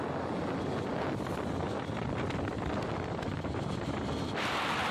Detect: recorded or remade recorded